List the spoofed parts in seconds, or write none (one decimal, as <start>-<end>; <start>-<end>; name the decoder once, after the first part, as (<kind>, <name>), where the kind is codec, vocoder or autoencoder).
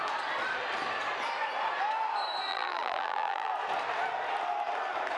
2.5-3.5 (vocoder, BigVGAN v2)